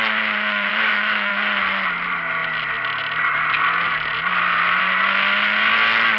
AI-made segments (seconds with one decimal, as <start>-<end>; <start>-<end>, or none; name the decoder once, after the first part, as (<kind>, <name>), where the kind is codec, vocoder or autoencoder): 0.7-1.3 (autoencoder, DAC-VAE)